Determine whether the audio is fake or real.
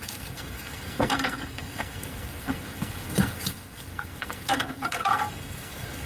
fake